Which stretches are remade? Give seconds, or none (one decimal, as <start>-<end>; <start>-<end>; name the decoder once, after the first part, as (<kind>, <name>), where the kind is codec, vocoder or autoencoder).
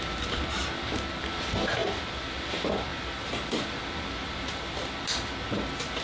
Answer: none